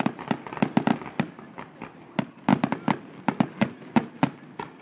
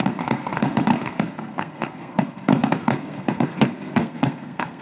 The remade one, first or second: second